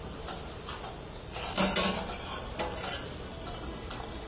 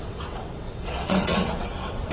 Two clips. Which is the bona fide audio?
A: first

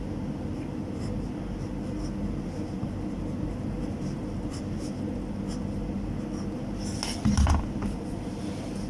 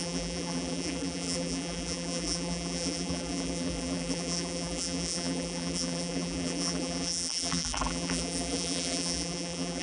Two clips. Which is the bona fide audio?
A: first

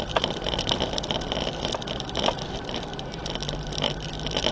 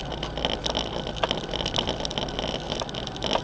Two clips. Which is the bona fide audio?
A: second